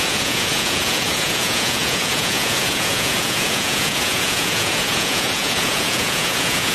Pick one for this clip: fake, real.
fake